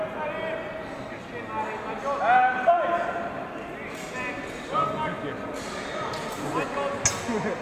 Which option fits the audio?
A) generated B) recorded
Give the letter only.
B